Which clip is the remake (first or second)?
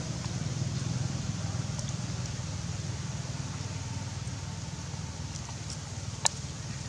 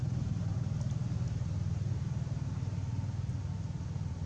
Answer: first